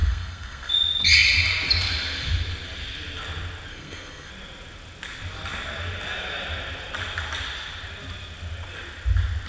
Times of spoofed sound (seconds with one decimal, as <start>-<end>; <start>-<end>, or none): 0.0-0.7; 3.7-4.3